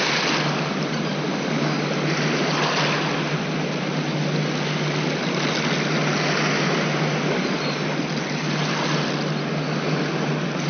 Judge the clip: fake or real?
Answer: real